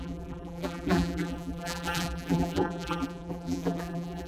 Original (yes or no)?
no